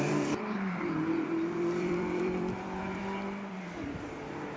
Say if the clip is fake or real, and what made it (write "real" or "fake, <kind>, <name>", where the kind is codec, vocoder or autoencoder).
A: fake, vocoder, BigVGAN v2